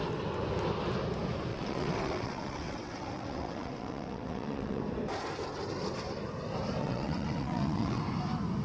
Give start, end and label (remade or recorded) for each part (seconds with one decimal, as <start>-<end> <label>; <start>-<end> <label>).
0.0-1.5 recorded; 1.5-4.8 remade; 4.8-6.8 recorded; 6.8-8.0 remade; 8.0-8.6 recorded